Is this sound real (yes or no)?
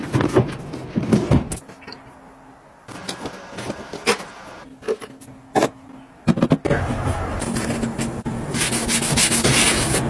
yes